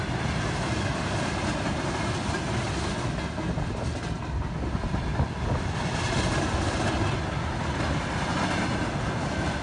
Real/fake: real